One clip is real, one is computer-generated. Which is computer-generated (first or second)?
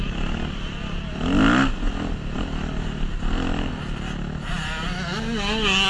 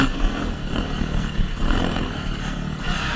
second